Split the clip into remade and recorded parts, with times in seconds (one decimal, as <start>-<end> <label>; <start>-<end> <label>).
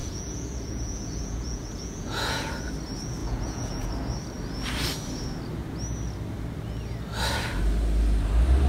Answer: 0.0-2.5 remade; 2.5-3.2 recorded; 3.2-3.9 remade; 3.9-8.7 recorded